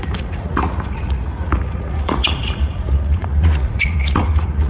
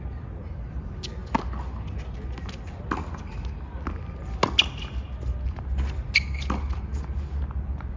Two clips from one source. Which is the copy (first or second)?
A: first